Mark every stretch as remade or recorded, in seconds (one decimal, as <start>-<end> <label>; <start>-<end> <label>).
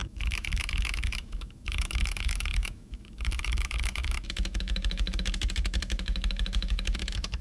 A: 0.0-7.4 remade